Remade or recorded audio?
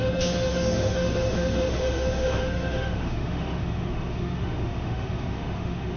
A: remade